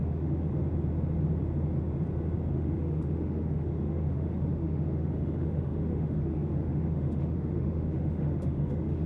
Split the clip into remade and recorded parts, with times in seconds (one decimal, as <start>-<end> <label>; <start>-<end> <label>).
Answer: 0.0-0.6 remade; 0.6-2.5 recorded; 2.5-9.1 remade